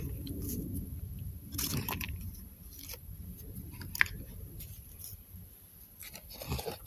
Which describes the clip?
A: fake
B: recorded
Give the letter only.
B